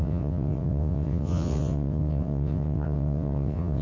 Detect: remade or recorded remade